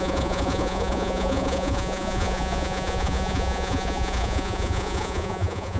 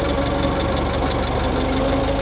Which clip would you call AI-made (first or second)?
first